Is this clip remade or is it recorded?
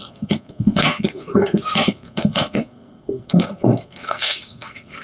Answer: remade